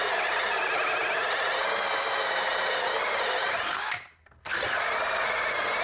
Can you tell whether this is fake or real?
real